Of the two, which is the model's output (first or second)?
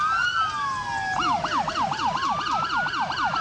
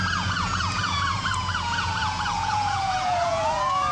second